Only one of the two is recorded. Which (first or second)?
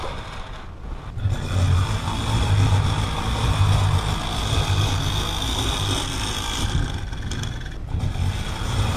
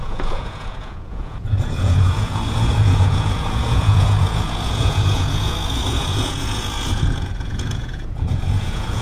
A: first